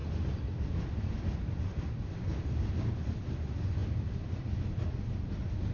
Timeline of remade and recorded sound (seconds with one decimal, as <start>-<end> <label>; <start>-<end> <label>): 0.0-5.7 recorded